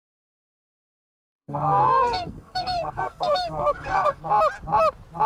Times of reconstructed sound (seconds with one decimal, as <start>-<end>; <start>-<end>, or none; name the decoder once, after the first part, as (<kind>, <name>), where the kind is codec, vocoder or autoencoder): 1.0-4.2 (codec, SNAC)